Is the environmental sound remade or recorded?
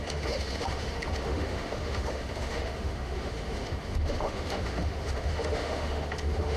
remade